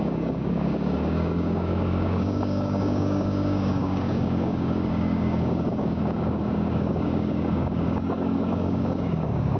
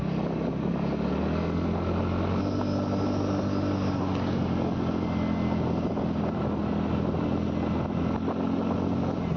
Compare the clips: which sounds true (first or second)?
second